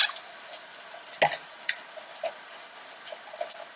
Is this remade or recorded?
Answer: recorded